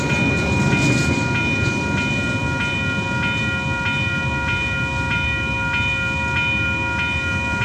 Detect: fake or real real